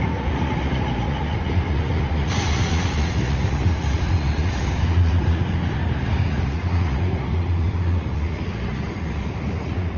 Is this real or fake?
fake